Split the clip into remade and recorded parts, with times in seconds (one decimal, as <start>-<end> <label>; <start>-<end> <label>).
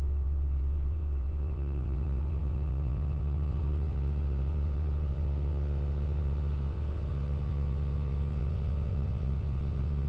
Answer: 0.0-10.1 remade